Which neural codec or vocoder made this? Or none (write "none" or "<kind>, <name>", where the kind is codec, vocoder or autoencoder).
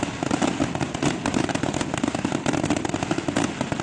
none